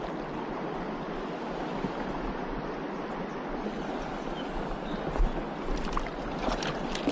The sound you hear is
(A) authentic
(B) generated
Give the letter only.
A